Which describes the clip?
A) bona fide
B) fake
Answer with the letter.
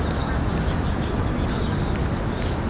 A